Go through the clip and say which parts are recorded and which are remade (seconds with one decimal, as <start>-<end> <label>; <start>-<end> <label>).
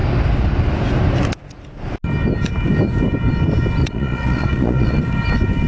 0.0-3.8 recorded; 3.8-5.0 remade; 5.0-5.7 recorded